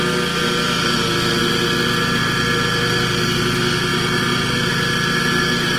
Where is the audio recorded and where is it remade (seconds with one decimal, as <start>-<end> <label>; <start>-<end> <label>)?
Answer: 0.0-3.9 recorded; 3.9-4.7 remade; 4.7-5.8 recorded